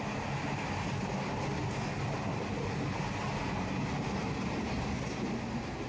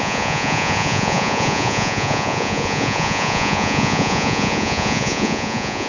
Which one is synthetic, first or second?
second